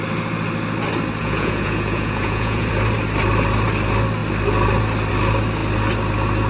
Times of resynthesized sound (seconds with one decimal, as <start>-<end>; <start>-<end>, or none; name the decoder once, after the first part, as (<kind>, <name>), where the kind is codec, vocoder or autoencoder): 1.2-2.7 (vocoder, Vocos)